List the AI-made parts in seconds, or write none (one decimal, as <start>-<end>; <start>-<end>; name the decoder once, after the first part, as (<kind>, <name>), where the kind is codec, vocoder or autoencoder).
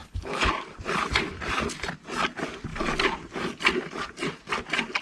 0.0-0.5 (codec, HILCodec)